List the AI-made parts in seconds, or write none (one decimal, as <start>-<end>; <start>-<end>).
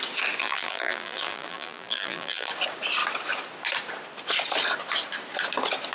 0.4-2.5